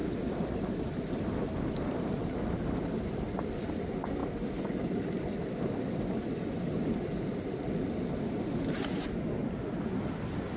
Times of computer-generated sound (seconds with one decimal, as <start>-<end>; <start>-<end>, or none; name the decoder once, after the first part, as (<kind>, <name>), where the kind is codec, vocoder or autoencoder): 0.0-3.7 (vocoder, BigVGAN v2); 9.4-10.0